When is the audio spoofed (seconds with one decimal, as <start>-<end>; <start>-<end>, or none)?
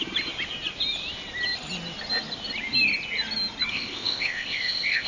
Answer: 3.7-5.1